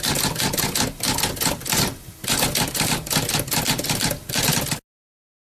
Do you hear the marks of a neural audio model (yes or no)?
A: no